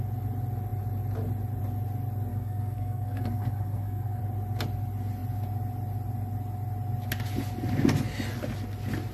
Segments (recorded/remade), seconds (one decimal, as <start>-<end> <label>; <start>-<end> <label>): 0.0-2.3 recorded; 2.3-4.2 remade; 4.2-9.1 recorded